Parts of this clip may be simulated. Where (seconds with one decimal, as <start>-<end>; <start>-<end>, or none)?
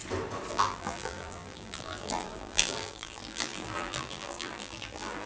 0.5-5.3